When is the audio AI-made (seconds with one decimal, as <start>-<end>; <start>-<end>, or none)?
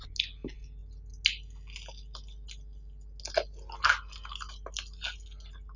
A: none